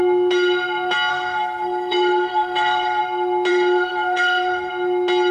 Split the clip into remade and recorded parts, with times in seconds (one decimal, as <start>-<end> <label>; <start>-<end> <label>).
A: 0.0-1.1 recorded; 1.1-3.0 remade; 3.0-3.5 recorded; 3.5-4.7 remade; 4.7-5.3 recorded